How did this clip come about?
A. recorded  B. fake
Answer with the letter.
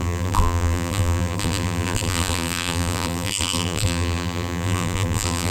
B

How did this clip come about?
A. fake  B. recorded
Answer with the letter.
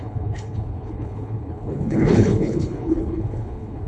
A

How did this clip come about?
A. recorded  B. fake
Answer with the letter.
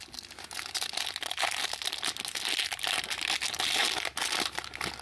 A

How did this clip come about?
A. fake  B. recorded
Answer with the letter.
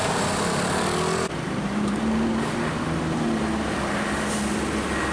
B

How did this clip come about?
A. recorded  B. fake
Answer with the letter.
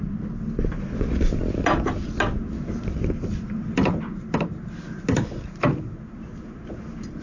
A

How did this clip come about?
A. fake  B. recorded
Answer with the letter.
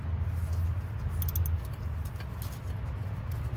B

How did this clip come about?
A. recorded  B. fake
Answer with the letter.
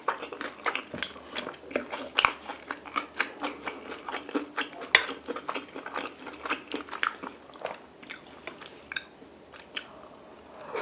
A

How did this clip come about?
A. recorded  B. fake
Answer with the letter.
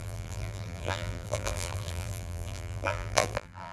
B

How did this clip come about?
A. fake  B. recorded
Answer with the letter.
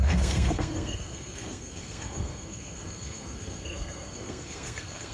A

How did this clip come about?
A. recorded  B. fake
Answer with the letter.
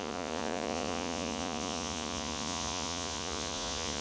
B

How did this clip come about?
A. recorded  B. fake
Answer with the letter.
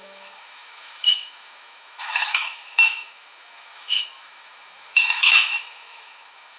B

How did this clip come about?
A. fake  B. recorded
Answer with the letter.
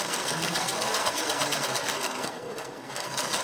A